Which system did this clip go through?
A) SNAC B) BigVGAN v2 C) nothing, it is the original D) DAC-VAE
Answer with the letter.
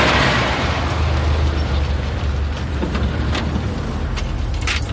C